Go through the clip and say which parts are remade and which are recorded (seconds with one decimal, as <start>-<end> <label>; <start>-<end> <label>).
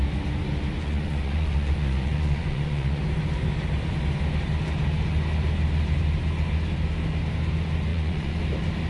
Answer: 0.0-0.7 recorded; 0.7-3.0 remade; 3.0-7.9 recorded; 7.9-8.4 remade; 8.4-8.9 recorded